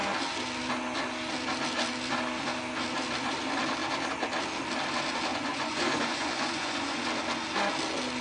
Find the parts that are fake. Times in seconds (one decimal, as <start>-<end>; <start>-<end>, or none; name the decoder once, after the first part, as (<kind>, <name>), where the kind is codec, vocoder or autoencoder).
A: 5.3-7.0 (vocoder, Vocos)